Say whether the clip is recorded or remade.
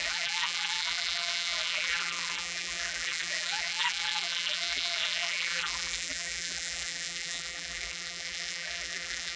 remade